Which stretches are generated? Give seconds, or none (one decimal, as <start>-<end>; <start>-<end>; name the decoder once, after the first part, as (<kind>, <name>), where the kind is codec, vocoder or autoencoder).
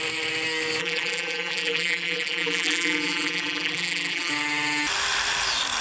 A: 0.8-4.3 (vocoder, BigVGAN v2)